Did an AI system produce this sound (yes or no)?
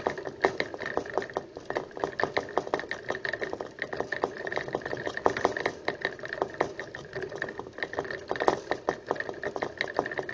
no